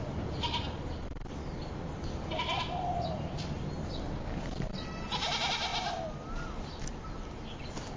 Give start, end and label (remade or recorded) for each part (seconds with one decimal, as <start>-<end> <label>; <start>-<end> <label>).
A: 0.0-8.0 recorded

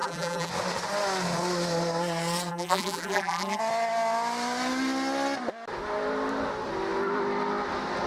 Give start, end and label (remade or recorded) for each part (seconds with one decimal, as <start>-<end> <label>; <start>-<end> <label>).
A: 0.0-0.5 remade; 0.5-2.5 recorded; 2.5-3.6 remade; 3.6-8.1 recorded

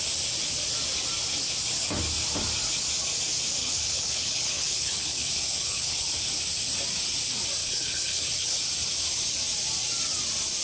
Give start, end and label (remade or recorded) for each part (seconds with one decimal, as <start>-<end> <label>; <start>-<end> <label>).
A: 0.0-3.6 recorded; 3.6-6.2 remade; 6.2-7.6 recorded; 7.6-8.6 remade; 8.6-10.6 recorded